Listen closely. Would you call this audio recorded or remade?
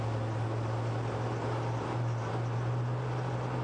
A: recorded